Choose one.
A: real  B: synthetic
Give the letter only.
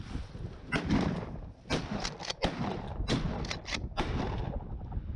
B